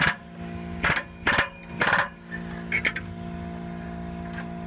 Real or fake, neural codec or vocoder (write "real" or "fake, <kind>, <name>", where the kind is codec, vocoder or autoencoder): real